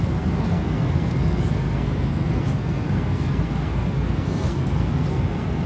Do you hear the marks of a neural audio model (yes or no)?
yes